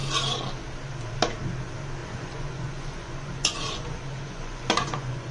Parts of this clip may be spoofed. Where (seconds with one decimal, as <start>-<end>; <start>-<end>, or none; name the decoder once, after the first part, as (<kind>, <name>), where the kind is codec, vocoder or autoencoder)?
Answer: 2.0-5.3 (vocoder, Vocos)